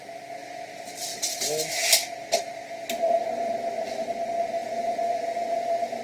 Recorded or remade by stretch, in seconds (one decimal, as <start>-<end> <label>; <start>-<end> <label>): 0.0-4.6 recorded; 4.6-6.0 remade